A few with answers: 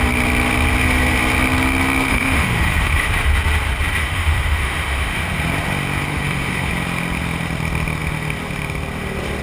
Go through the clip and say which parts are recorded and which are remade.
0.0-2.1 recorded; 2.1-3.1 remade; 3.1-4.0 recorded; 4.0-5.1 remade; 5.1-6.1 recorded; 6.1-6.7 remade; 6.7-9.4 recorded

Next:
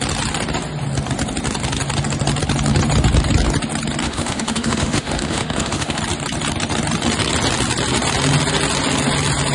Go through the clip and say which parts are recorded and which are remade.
0.0-4.0 recorded; 4.0-6.0 remade; 6.0-9.5 recorded

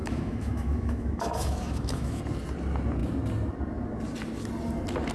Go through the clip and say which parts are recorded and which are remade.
0.0-2.2 remade; 2.2-5.1 recorded

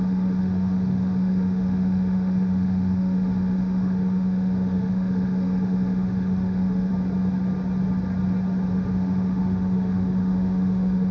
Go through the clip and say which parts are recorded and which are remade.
0.0-6.9 remade; 6.9-8.7 recorded; 8.7-11.1 remade

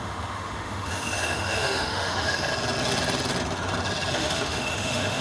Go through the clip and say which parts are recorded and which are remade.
0.0-2.5 remade; 2.5-4.1 recorded; 4.1-5.2 remade

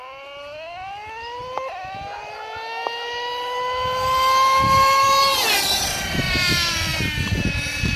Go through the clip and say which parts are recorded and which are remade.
0.0-8.0 recorded

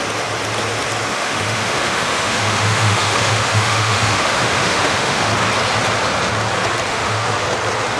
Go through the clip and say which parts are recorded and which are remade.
0.0-1.1 recorded; 1.1-5.3 remade; 5.3-6.9 recorded; 6.9-7.5 remade; 7.5-8.0 recorded

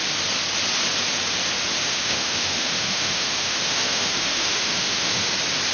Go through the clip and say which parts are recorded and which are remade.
0.0-1.9 recorded; 1.9-5.3 remade; 5.3-5.7 recorded